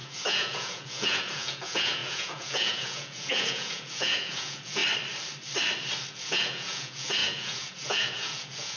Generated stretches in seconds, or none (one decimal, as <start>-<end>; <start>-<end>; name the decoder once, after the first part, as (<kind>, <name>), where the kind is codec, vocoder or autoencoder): 0.0-4.8 (vocoder, Vocos); 6.1-8.8